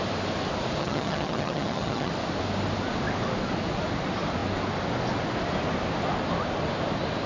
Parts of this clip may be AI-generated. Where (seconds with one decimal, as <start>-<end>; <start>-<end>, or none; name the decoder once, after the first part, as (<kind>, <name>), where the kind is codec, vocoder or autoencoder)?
0.8-2.1 (vocoder, HiFi-GAN)